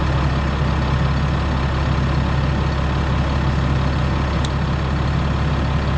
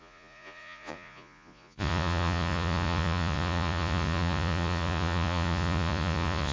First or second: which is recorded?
first